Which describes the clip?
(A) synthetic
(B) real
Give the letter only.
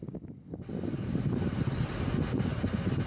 B